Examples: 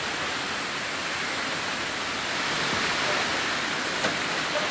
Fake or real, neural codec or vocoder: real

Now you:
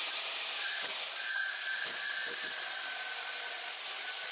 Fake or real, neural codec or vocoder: real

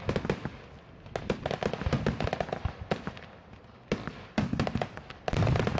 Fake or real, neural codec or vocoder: real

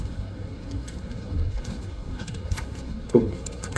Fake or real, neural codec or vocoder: fake, codec, SNAC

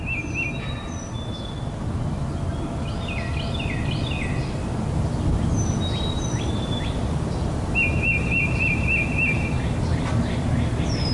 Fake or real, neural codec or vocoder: real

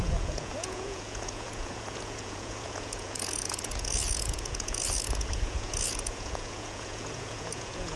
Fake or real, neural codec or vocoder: fake, vocoder, Vocos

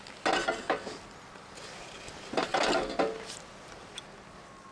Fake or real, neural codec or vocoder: real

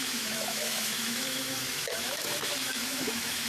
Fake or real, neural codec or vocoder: fake, autoencoder, DAC-VAE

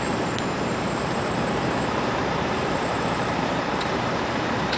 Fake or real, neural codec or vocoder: fake, vocoder, BigVGAN v2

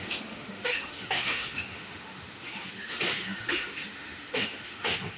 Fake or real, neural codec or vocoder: fake, autoencoder, DAC-VAE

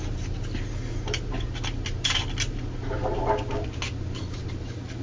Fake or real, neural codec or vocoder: real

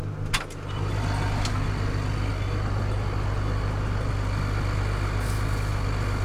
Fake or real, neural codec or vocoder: real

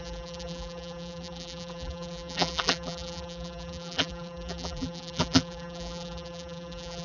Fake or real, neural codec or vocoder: fake, vocoder, BigVGAN v2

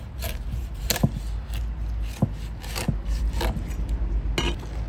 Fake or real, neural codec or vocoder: real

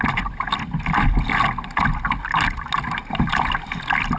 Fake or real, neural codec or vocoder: real